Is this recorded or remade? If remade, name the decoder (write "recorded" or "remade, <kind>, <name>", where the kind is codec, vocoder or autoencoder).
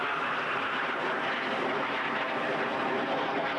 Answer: recorded